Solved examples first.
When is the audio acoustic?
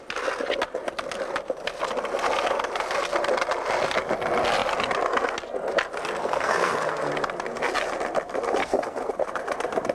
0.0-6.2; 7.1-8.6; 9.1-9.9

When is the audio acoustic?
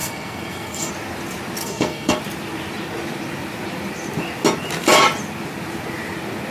0.9-1.6; 2.2-6.5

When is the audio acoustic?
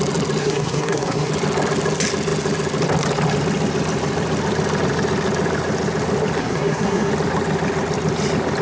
0.0-0.4; 1.3-6.4; 7.1-8.6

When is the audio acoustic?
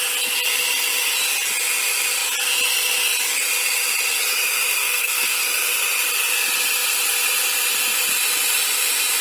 0.0-4.8; 5.4-9.2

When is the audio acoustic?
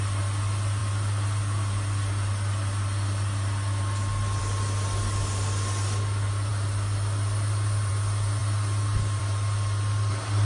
0.0-10.4